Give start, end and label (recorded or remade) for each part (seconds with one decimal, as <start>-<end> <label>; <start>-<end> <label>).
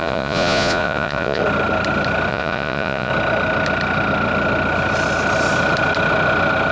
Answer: 0.0-1.4 remade; 1.4-2.3 recorded; 2.3-3.1 remade; 3.1-6.7 recorded